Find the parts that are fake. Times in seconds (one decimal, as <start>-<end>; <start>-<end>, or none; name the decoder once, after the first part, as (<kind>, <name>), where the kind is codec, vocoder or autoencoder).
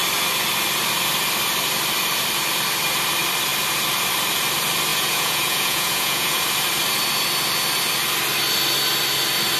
4.9-6.4 (vocoder, Vocos)